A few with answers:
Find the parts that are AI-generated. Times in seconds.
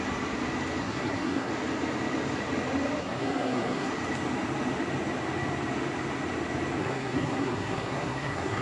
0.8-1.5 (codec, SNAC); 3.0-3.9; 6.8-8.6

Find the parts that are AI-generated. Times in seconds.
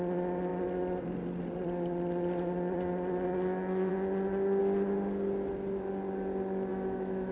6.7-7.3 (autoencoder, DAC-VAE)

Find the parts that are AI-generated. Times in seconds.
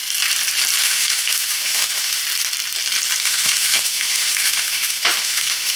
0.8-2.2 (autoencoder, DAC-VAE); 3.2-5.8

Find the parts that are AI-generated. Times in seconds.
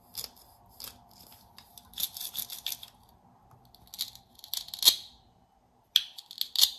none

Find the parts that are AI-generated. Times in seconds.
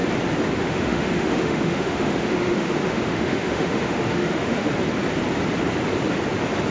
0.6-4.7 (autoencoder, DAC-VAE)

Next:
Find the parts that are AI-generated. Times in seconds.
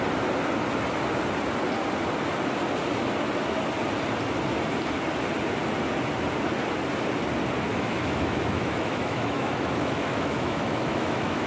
7.7-11.5 (autoencoder, DAC-VAE)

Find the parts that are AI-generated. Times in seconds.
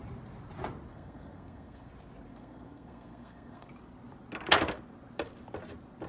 0.9-1.9 (codec, SNAC); 2.3-3.7